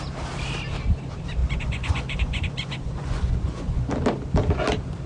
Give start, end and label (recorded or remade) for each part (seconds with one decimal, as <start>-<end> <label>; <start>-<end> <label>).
0.0-1.4 recorded; 1.4-3.9 remade; 3.9-5.1 recorded